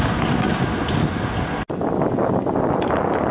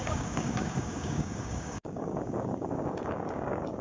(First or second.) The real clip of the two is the first